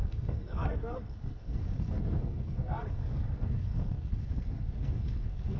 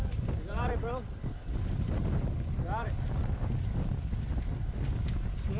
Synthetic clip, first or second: first